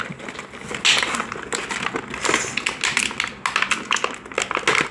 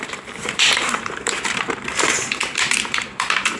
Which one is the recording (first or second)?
first